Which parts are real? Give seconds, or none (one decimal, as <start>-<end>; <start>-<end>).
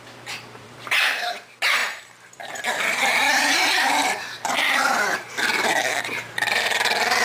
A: none